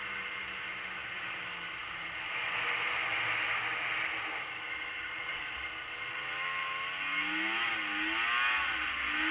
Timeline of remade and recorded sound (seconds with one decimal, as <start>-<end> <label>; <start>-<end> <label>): 0.0-9.3 recorded